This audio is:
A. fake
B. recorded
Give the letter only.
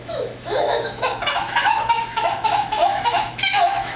A